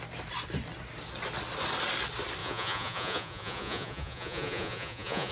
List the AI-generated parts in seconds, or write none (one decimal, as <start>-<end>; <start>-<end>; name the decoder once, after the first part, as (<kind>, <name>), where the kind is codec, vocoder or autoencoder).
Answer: 2.4-5.3 (vocoder, Vocos)